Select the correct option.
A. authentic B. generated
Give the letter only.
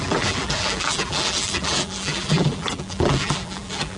B